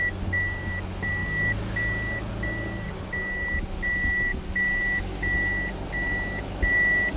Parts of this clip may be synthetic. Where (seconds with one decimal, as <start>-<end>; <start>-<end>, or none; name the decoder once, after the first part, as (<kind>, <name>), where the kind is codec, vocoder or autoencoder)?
none